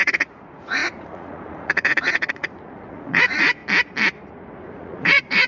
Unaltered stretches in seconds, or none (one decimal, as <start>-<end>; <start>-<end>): 3.6-4.3